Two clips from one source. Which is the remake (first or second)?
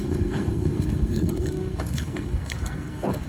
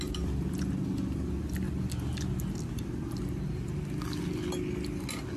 first